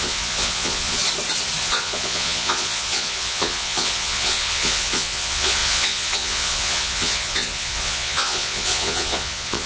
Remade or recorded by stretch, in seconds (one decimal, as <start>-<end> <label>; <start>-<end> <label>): 0.0-1.0 remade; 1.0-1.6 recorded; 1.6-9.7 remade